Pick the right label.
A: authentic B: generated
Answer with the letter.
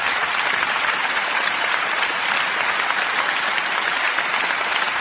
B